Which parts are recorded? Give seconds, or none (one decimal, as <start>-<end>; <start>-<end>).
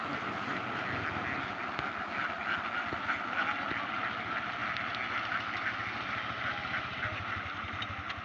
0.0-8.2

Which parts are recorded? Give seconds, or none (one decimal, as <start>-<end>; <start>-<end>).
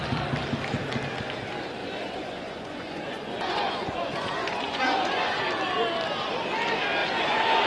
0.0-1.8; 5.4-7.0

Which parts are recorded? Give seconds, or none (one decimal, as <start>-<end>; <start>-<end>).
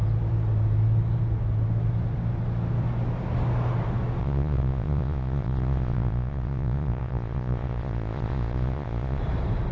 0.0-4.2; 9.2-9.7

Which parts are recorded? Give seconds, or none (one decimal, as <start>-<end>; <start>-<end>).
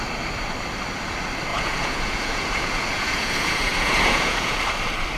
0.0-1.5; 4.6-5.2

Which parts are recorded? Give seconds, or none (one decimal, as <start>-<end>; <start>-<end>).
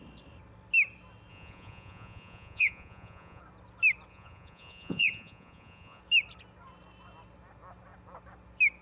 0.0-1.3; 3.4-4.1; 6.0-8.8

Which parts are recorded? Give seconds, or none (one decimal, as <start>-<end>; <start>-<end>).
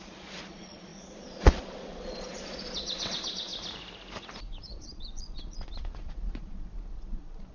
3.5-4.6